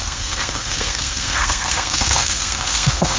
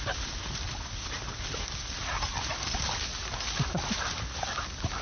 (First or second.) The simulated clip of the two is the first